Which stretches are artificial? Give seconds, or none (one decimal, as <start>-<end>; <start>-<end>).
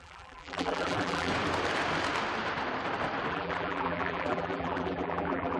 0.0-1.3; 3.3-5.6